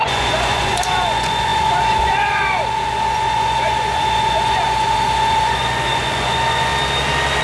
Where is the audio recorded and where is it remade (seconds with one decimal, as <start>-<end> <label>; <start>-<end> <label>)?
0.0-6.7 remade; 6.7-7.4 recorded